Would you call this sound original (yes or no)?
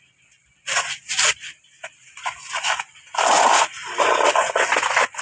no